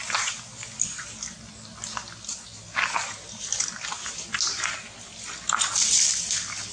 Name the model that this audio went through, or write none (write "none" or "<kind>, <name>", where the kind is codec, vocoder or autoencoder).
none